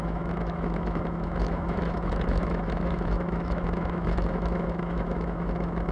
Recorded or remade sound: remade